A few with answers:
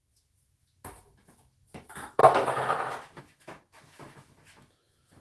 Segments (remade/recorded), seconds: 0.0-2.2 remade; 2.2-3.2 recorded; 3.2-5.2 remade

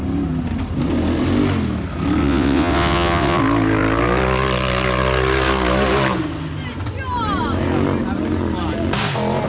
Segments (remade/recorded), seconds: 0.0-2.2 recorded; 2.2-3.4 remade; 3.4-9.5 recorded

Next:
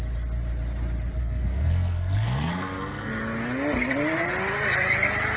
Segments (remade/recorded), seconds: 0.0-1.2 recorded; 1.2-3.1 remade; 3.1-5.4 recorded